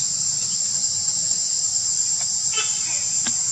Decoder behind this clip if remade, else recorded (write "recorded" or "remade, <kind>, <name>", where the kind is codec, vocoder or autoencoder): recorded